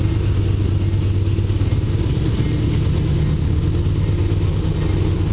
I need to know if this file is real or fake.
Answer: real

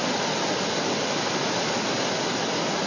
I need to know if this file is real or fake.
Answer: real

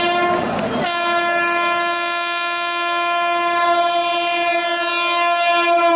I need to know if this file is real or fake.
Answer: real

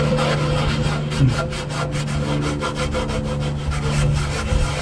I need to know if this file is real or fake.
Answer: real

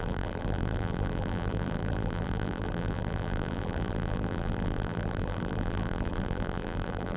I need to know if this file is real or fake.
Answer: fake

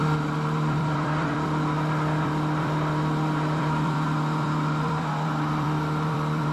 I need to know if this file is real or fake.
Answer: fake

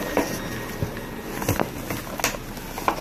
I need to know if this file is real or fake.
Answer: real